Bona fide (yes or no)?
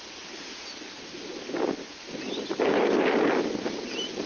yes